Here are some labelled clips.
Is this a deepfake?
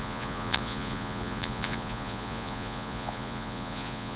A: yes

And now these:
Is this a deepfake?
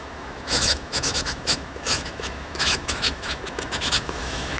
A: yes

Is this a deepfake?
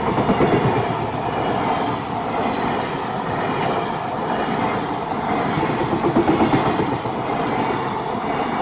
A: no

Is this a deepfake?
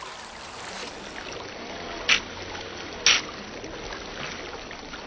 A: no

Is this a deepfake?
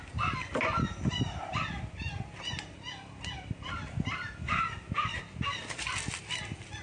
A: no